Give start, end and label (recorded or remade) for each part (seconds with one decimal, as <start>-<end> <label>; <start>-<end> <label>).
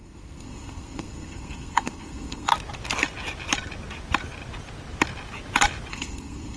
0.0-2.5 remade; 2.5-5.9 recorded; 5.9-6.6 remade